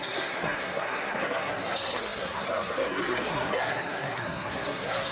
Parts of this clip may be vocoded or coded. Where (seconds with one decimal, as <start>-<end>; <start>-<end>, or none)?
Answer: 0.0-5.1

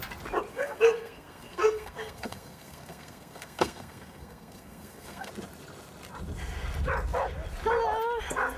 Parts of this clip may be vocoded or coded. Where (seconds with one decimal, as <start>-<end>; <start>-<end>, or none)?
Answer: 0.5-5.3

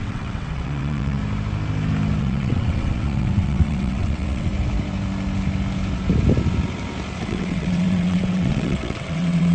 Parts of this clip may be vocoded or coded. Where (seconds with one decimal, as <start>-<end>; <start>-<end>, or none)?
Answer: 0.0-1.2; 2.2-4.5; 7.2-9.5

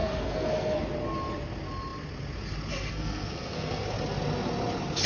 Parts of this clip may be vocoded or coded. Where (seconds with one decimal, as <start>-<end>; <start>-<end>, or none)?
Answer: 0.0-0.8; 2.9-3.8

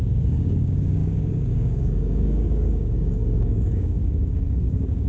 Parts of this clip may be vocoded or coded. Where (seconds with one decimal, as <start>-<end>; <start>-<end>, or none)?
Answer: 0.0-5.1

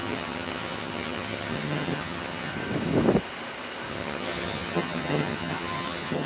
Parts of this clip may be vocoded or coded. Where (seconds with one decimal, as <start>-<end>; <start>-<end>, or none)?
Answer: 0.0-2.5; 3.9-6.3

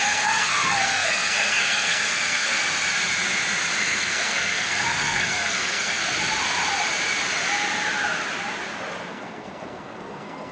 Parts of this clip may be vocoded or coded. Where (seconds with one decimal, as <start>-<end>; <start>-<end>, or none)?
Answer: 0.0-2.6; 3.8-6.0; 9.1-10.5

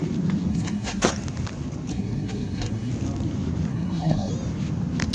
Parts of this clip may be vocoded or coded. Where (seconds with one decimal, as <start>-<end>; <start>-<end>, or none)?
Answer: 0.5-1.1; 1.9-2.9; 3.7-4.3